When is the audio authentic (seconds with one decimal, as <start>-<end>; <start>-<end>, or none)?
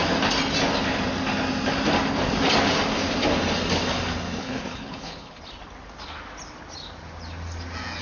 0.0-4.4; 5.4-8.0